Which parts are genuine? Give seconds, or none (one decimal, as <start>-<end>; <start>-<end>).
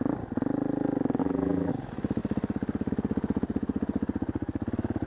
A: 0.0-1.2; 1.7-5.1